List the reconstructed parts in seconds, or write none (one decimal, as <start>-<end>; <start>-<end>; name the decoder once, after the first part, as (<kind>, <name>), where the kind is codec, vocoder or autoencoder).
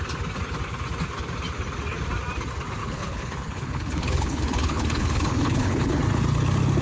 2.8-6.0 (codec, HILCodec)